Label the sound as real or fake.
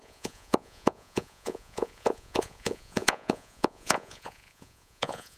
fake